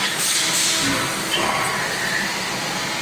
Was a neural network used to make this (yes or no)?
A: no